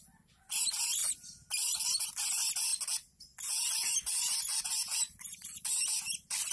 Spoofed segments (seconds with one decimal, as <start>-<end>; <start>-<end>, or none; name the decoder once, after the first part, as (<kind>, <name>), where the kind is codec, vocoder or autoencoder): none

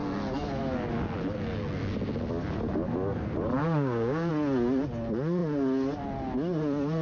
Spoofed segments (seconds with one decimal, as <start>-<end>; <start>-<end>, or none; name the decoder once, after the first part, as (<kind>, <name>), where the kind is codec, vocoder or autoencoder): 3.6-4.3 (codec, DAC)

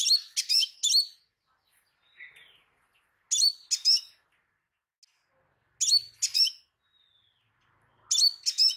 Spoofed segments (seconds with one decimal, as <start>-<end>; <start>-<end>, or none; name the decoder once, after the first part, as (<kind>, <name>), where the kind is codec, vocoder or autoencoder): none

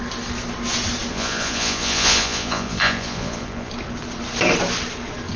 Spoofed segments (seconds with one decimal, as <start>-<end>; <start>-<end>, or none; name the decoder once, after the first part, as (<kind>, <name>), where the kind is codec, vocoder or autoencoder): 1.1-3.7 (vocoder, Vocos)

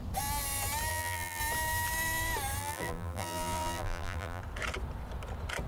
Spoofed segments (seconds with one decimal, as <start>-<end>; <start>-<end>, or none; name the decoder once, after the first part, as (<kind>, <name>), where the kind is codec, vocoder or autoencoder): 0.9-1.4 (vocoder, BigVGAN v2); 2.6-4.4

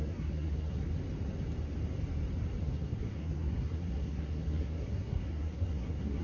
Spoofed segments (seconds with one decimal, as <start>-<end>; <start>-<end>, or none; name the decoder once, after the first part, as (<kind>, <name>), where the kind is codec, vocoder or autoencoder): 0.0-0.9 (codec, SNAC); 2.6-6.2

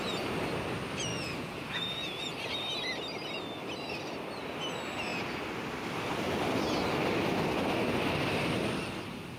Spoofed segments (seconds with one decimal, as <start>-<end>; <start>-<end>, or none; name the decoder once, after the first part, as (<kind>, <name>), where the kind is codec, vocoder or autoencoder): 1.1-2.3 (vocoder, Vocos)

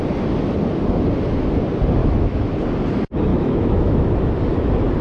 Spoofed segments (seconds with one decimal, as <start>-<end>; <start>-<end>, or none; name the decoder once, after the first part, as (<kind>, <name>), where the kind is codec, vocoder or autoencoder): 2.0-2.5 (autoencoder, DAC-VAE); 3.3-4.3